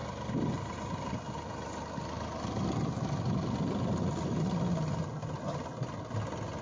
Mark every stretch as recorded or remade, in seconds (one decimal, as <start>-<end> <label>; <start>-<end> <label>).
0.0-6.6 recorded